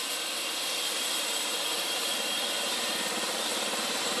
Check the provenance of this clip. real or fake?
real